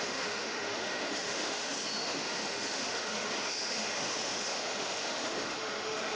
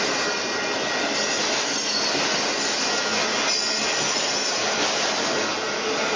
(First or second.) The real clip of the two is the second